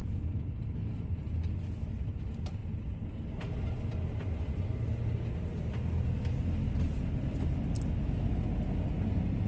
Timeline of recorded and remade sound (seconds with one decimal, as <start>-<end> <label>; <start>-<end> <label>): 0.0-9.5 recorded